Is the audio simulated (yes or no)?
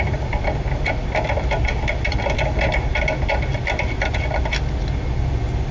no